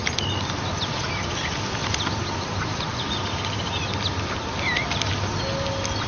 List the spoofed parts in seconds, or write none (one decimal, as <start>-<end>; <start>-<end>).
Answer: none